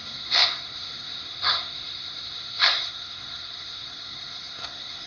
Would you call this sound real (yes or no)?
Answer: no